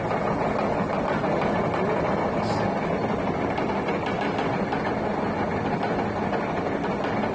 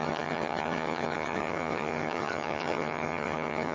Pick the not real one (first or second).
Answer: second